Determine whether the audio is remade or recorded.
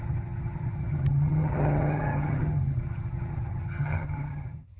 remade